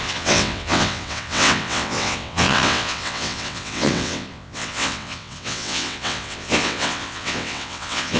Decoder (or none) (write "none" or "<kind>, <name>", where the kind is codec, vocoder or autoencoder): vocoder, WaveNeXt